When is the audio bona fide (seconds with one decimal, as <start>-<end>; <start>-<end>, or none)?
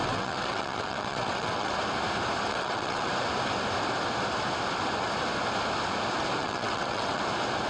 1.7-2.5; 3.1-6.4; 7.2-7.7